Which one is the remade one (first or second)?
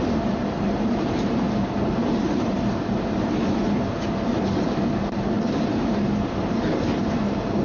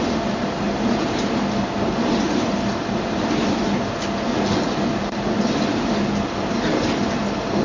first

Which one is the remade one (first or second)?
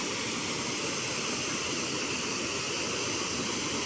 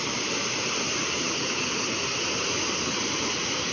second